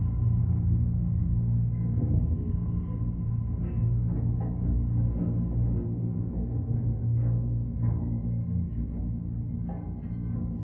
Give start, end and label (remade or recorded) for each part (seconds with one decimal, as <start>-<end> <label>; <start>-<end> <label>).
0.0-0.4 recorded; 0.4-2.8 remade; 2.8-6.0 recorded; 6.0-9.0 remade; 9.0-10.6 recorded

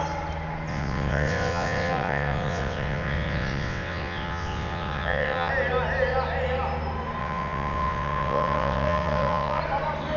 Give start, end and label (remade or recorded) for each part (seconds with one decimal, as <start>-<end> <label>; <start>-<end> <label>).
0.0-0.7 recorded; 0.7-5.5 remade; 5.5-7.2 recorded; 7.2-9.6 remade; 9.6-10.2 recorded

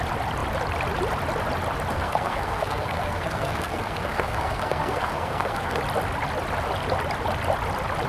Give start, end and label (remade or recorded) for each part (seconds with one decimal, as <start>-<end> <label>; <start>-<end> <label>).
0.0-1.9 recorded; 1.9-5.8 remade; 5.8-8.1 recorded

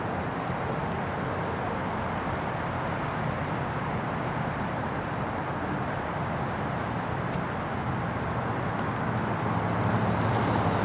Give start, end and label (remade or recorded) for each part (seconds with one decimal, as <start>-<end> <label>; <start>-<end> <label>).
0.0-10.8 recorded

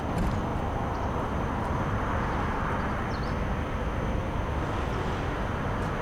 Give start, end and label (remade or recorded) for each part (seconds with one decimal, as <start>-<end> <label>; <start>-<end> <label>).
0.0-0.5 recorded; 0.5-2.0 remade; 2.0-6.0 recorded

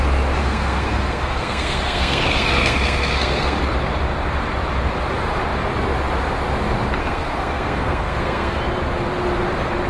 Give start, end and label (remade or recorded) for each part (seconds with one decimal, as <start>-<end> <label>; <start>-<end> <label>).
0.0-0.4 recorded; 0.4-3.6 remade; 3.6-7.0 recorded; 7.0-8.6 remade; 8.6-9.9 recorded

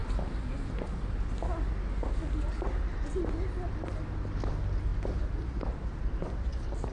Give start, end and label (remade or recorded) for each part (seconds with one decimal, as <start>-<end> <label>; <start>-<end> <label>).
0.0-6.9 recorded

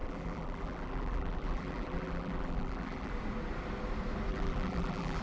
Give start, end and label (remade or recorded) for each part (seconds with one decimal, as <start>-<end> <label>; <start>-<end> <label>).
0.0-3.1 remade; 3.1-4.3 recorded; 4.3-5.2 remade